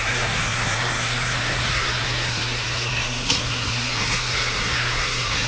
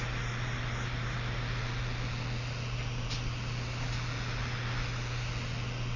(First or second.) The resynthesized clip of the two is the first